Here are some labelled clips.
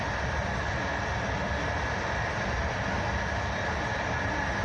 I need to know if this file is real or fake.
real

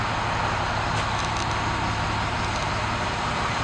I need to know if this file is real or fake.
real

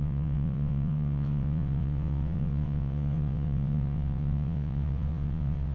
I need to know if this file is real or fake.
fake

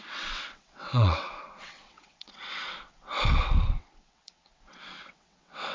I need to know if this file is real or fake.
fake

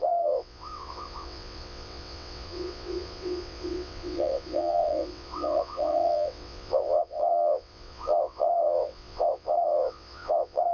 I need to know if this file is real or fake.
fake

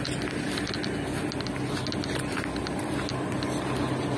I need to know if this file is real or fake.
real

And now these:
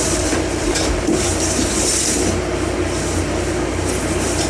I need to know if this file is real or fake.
real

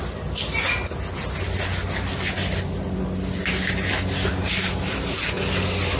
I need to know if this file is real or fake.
real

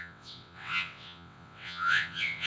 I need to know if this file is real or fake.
fake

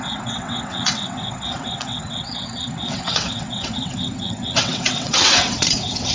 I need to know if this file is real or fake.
fake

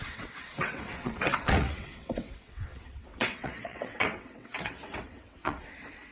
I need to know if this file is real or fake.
fake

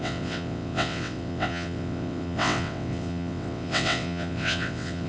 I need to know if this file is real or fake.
fake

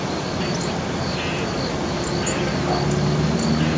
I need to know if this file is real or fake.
real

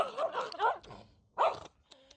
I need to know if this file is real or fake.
real